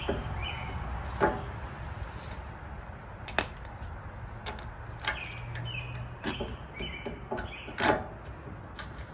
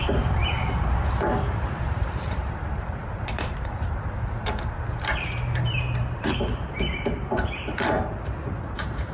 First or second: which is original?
first